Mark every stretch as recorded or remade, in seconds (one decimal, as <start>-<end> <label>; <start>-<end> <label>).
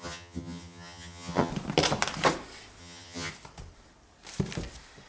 0.0-1.5 remade; 1.5-2.8 recorded; 2.8-3.3 remade; 3.3-5.1 recorded